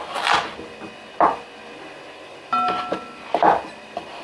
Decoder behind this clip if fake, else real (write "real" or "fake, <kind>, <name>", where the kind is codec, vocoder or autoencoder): real